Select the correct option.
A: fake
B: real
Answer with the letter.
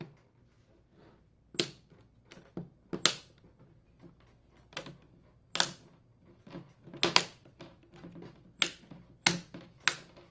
B